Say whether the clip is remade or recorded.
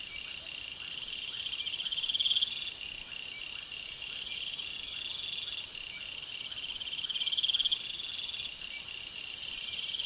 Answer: recorded